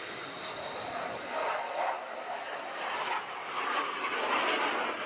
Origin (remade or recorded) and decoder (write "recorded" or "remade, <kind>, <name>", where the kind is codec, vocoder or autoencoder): recorded